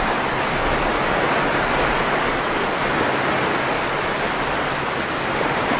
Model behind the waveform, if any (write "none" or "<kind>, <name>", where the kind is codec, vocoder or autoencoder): none